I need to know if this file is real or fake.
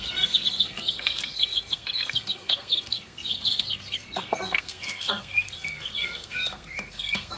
fake